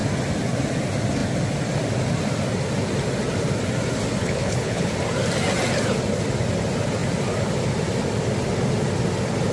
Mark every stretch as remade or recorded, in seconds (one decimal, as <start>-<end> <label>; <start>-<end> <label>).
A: 0.0-4.2 recorded; 4.2-4.9 remade; 4.9-9.5 recorded